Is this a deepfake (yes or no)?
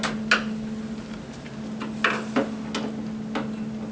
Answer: no